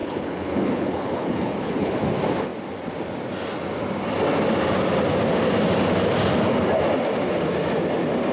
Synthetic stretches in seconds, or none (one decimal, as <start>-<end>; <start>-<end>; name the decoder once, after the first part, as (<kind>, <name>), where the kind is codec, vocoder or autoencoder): 0.0-2.0 (codec, HILCodec)